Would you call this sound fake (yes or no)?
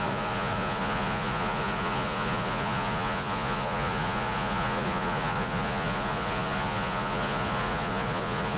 yes